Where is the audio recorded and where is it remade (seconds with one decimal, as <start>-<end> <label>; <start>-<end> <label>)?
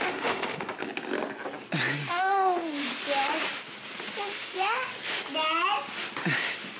0.0-0.7 remade; 0.7-2.1 recorded; 2.1-2.9 remade; 2.9-4.2 recorded; 4.2-4.9 remade; 4.9-6.8 recorded